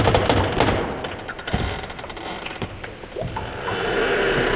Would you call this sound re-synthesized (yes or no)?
no